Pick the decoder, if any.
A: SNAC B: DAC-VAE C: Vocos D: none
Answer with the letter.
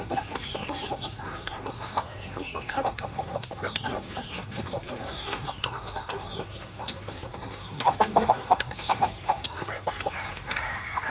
A